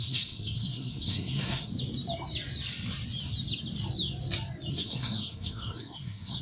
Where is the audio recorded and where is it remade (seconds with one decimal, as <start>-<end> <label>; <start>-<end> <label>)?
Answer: 0.0-1.7 remade; 1.7-4.7 recorded; 4.7-6.4 remade